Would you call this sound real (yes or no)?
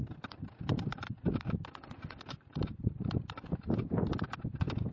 yes